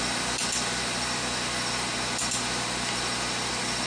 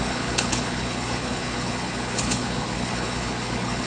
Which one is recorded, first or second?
first